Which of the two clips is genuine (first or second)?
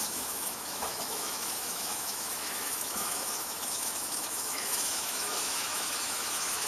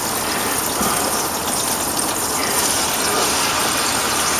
second